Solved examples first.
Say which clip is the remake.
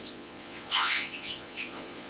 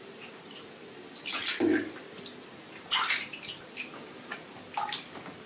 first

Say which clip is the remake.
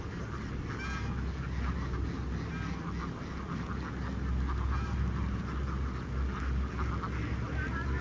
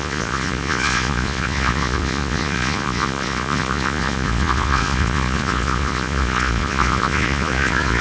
second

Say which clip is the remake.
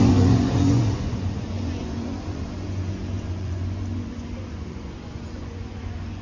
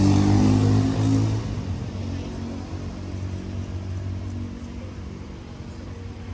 first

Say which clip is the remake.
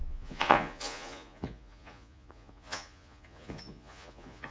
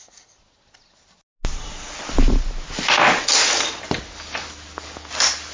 first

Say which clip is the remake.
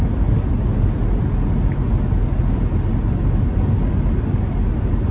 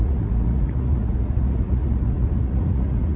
second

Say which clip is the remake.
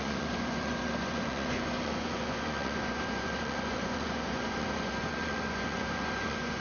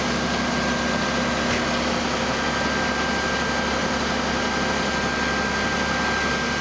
first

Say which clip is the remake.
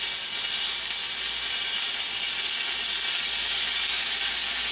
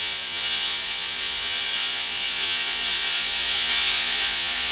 second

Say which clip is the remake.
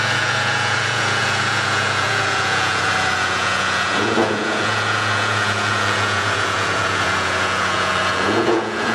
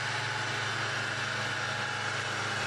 first